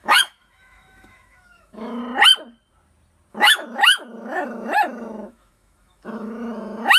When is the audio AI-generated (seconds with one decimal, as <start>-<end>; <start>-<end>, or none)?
0.0-2.0; 3.3-7.0